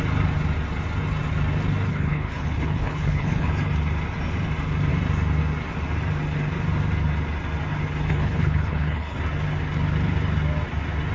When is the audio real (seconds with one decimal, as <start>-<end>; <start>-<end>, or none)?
0.0-1.9; 3.5-8.1; 9.2-11.1